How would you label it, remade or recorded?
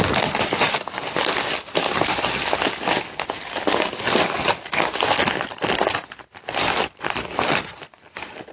recorded